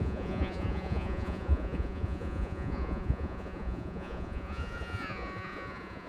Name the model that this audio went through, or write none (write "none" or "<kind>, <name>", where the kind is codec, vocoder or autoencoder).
vocoder, Vocos